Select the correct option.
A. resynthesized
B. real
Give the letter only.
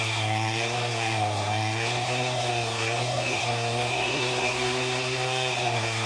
A